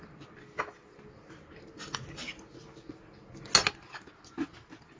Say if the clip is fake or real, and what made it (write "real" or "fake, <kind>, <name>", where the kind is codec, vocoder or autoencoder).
real